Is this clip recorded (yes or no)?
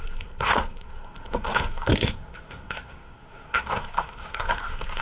no